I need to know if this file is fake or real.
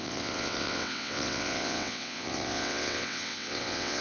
fake